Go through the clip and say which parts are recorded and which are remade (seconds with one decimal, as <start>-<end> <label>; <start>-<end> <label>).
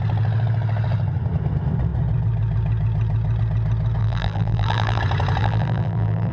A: 0.0-4.0 recorded; 4.0-5.0 remade; 5.0-5.4 recorded; 5.4-6.3 remade